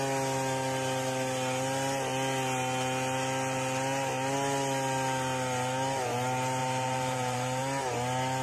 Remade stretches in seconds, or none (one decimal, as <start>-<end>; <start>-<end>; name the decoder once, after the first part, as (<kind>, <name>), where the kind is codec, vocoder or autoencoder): 6.6-7.6 (vocoder, BigVGAN v2)